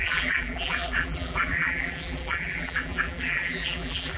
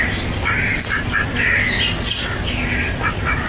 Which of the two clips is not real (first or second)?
first